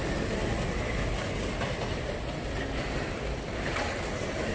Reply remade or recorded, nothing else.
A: recorded